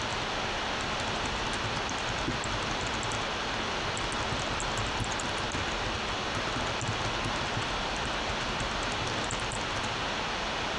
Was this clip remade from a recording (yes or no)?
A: no